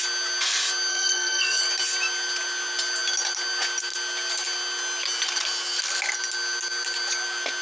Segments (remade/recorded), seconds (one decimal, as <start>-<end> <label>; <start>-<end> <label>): 0.0-0.9 recorded; 0.9-1.6 remade; 1.6-7.6 recorded